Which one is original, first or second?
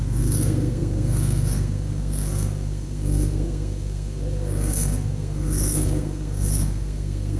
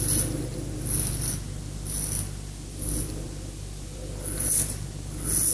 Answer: second